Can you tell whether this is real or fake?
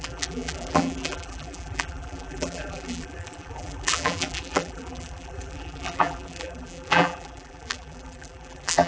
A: fake